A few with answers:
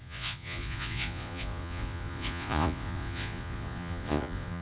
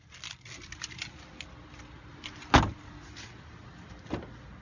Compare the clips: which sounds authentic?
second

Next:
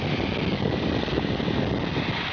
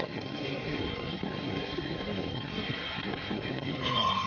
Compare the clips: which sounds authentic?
first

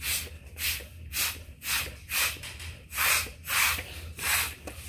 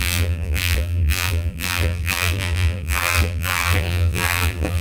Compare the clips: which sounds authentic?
first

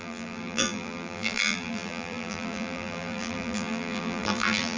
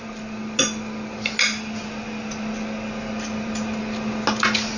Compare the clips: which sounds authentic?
second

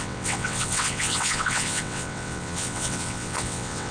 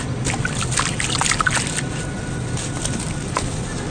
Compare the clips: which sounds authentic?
second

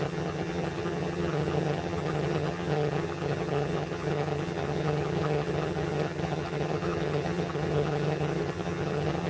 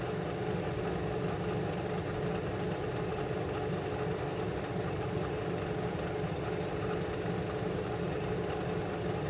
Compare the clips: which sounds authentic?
second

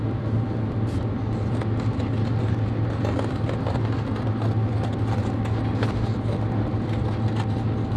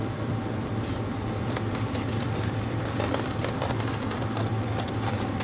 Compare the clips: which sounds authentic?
first